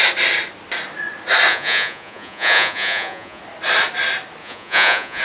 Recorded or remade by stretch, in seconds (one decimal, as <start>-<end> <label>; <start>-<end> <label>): 0.0-1.5 recorded; 1.5-3.4 remade; 3.4-4.4 recorded; 4.4-5.2 remade